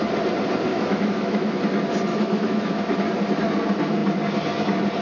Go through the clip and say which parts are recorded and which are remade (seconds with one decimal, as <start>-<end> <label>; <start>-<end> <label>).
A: 0.0-0.7 recorded; 0.7-1.6 remade; 1.6-2.1 recorded; 2.1-2.7 remade; 2.7-5.0 recorded